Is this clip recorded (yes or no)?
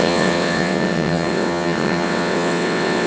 no